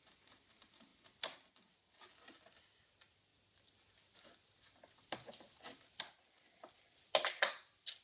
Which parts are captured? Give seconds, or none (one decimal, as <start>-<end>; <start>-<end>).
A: 0.0-8.0